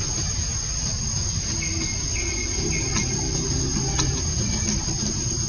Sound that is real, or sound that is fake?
real